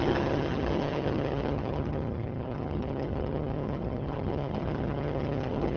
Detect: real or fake fake